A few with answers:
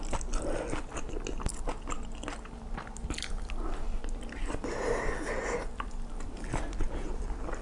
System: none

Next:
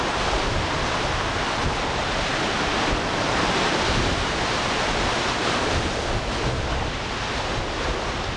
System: none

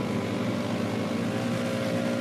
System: none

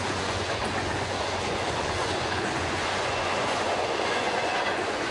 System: vocoder, Vocos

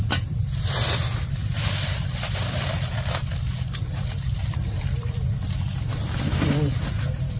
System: vocoder, BigVGAN v2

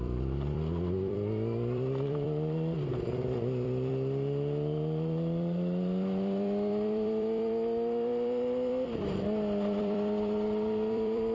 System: vocoder, BigVGAN v2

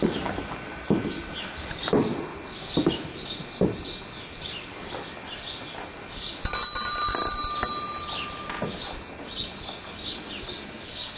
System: none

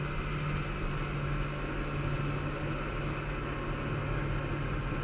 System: none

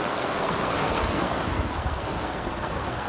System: codec, SNAC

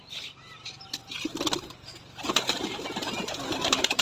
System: vocoder, BigVGAN v2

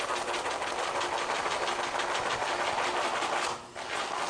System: none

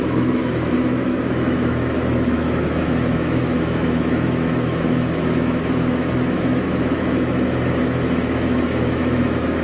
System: autoencoder, DAC-VAE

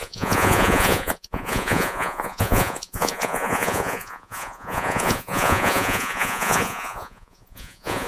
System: vocoder, Vocos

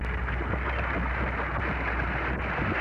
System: none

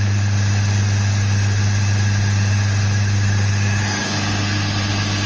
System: none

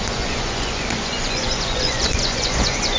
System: vocoder, Vocos